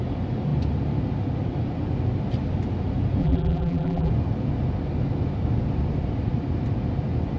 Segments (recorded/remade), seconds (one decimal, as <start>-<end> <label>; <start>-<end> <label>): 0.0-3.2 recorded; 3.2-4.1 remade; 4.1-7.4 recorded